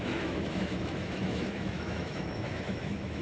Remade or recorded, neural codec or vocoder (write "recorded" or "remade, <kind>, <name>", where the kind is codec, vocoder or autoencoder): remade, autoencoder, DAC-VAE